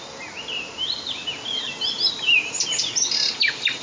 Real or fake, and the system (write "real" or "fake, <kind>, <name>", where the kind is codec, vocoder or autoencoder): real